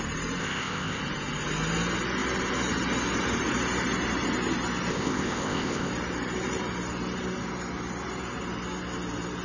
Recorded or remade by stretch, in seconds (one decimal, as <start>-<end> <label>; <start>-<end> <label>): 0.0-0.4 recorded; 0.4-1.0 remade; 1.0-4.9 recorded; 4.9-5.9 remade; 5.9-9.4 recorded